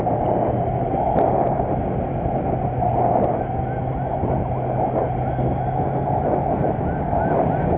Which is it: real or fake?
real